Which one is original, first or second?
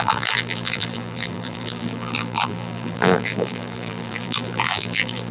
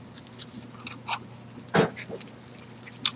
second